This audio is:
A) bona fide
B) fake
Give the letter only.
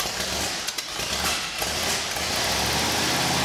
A